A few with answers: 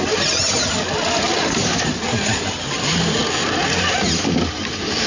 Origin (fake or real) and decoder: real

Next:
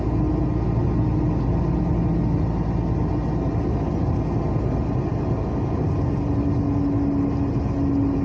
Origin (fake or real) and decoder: real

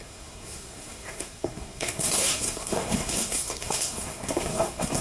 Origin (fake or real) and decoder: fake, codec, SNAC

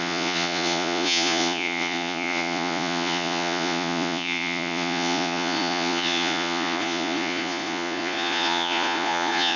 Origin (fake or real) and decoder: fake, vocoder, Vocos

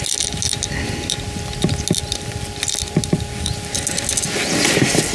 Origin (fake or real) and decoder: real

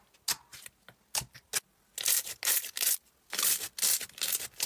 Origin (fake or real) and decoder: real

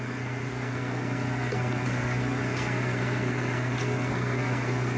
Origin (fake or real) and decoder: fake, codec, SNAC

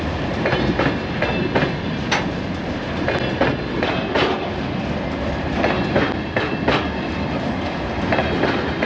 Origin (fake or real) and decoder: real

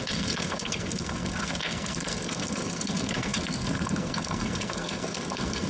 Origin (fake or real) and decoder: fake, codec, SNAC